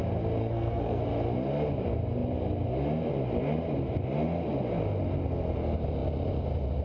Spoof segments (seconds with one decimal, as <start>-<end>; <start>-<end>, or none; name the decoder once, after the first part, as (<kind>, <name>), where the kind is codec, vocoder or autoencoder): 0.4-1.0 (codec, SNAC)